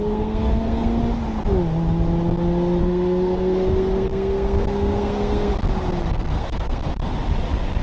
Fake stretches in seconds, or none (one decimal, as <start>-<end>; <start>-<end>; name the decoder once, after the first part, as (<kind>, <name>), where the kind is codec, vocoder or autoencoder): 0.0-1.0 (codec, SNAC); 2.8-5.5; 6.1-6.8